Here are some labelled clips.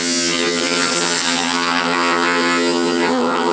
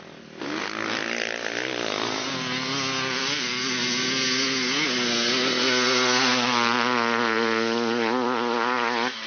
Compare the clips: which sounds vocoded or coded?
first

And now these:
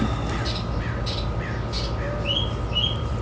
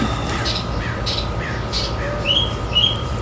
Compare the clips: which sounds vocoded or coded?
second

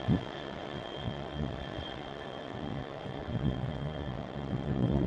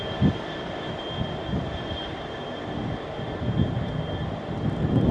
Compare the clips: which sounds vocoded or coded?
first